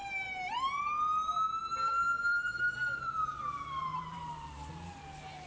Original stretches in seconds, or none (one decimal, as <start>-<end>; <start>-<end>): 0.7-1.3; 2.6-3.9; 4.7-5.5